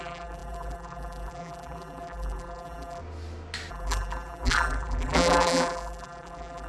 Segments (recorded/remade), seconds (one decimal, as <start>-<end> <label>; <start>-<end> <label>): 0.0-3.0 remade; 3.0-3.7 recorded; 3.7-6.7 remade